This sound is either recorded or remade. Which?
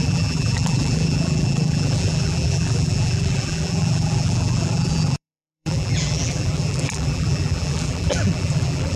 remade